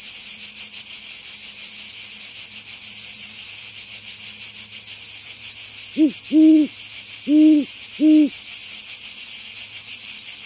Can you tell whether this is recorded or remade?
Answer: recorded